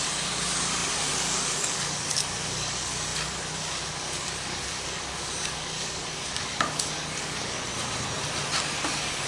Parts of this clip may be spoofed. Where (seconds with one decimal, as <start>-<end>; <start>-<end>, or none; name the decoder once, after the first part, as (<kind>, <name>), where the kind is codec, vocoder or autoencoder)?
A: 0.0-7.7 (codec, DAC); 8.6-9.3